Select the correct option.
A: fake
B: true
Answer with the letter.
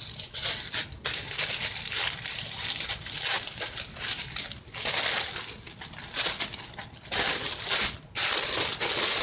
B